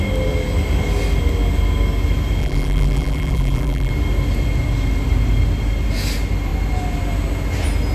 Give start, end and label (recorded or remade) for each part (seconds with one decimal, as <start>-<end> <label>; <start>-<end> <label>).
0.0-2.4 recorded; 2.4-3.9 remade; 3.9-7.9 recorded